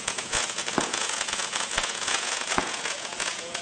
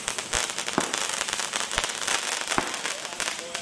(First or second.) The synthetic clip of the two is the first